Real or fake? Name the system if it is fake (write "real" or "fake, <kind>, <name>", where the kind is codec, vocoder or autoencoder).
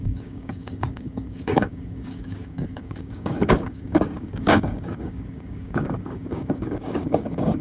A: fake, codec, DAC